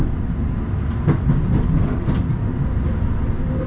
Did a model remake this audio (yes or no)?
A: no